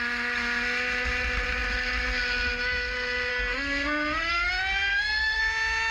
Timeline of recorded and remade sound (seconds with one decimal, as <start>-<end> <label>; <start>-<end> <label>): 0.0-3.3 recorded; 3.3-4.5 remade; 4.5-4.9 recorded; 4.9-5.4 remade; 5.4-5.9 recorded